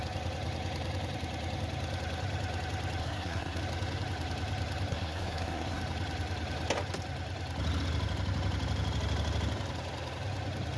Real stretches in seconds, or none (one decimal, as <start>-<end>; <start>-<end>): 0.0-3.0; 3.6-4.9; 5.8-10.8